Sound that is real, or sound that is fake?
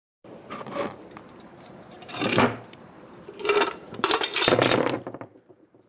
fake